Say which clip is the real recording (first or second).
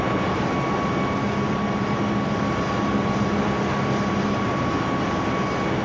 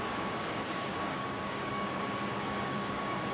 first